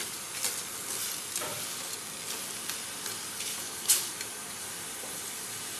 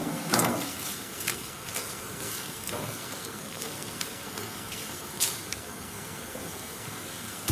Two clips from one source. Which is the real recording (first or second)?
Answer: first